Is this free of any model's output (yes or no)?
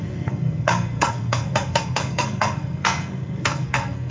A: no